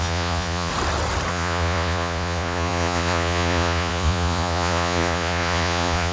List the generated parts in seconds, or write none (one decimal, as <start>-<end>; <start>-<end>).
0.0-0.7; 1.3-6.1